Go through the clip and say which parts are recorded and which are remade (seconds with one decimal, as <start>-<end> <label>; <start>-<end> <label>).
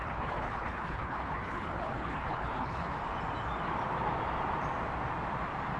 0.0-2.9 remade; 2.9-5.8 recorded